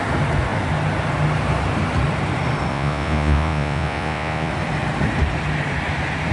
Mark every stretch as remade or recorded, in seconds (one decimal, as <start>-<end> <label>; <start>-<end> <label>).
0.0-2.7 recorded; 2.7-4.5 remade; 4.5-6.3 recorded